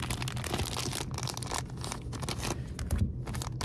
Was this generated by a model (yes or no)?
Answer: no